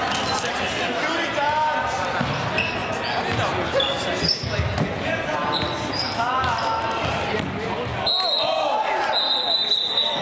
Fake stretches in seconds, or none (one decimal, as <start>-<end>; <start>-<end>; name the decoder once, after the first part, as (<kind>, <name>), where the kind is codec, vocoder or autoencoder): none